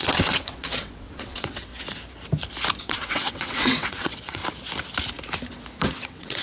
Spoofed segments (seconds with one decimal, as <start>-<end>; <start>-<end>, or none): 0.0-1.7; 2.8-4.4; 5.8-6.4